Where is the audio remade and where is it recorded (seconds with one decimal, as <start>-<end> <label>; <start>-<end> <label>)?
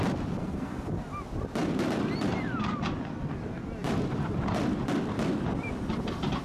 0.0-0.4 recorded; 0.4-0.9 remade; 0.9-6.4 recorded